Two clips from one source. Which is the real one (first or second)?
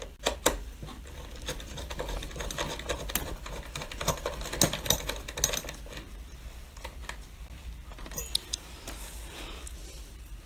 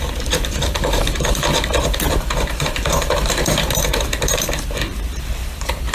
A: first